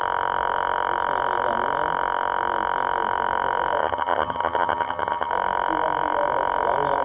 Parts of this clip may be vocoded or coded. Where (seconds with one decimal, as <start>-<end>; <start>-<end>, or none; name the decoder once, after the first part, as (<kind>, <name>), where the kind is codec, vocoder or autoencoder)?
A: 3.8-5.3 (vocoder, HiFi-GAN)